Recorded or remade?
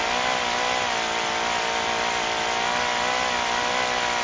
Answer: recorded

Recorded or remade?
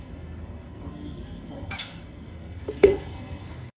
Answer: remade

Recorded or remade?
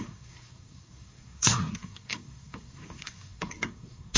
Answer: remade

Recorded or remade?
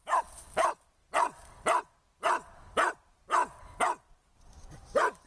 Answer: recorded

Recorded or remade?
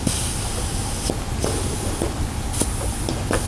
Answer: recorded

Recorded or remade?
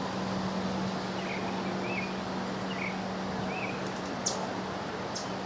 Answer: recorded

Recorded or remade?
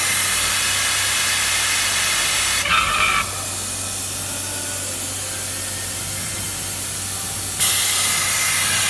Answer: recorded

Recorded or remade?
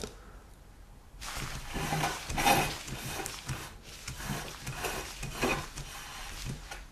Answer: recorded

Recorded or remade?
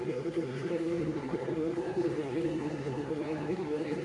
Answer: remade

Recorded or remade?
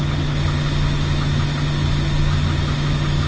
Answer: recorded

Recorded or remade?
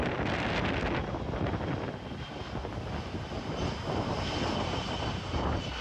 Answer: recorded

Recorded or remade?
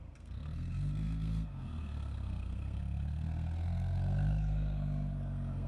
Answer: remade